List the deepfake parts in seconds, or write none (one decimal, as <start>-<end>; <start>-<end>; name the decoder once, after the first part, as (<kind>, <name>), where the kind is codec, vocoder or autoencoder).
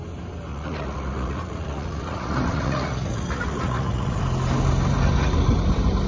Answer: 0.5-4.2 (vocoder, Vocos)